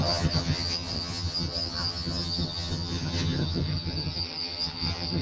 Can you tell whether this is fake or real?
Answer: fake